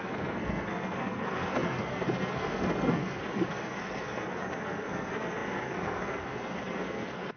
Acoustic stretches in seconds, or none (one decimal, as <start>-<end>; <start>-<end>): none